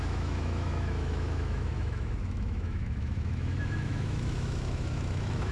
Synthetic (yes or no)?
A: yes